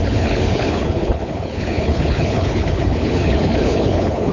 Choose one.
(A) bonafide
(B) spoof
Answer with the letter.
B